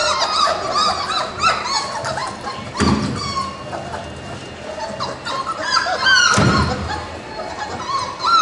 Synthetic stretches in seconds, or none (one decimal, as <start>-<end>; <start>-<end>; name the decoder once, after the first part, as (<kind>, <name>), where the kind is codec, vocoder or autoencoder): none